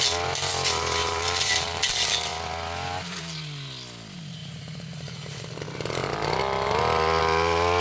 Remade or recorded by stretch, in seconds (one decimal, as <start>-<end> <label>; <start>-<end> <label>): 0.0-1.0 recorded; 1.0-1.8 remade; 1.8-4.4 recorded; 4.4-5.4 remade; 5.4-7.8 recorded